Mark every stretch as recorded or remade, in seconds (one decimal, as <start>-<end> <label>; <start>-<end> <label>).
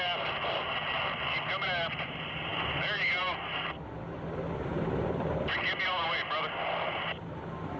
0.0-4.7 recorded; 4.7-5.3 remade; 5.3-7.8 recorded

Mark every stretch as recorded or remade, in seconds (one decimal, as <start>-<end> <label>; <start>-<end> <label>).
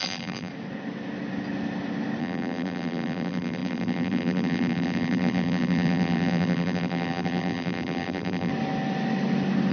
0.0-0.5 remade; 0.5-2.2 recorded; 2.2-8.5 remade; 8.5-9.7 recorded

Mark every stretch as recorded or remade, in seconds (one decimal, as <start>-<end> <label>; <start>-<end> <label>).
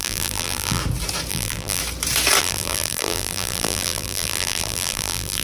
0.0-0.8 remade; 0.8-1.3 recorded; 1.3-1.8 remade; 1.8-2.4 recorded; 2.4-5.4 remade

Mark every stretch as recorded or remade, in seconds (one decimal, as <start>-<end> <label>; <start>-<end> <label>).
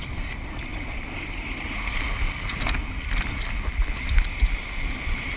0.0-0.7 recorded; 0.7-3.9 remade; 3.9-5.4 recorded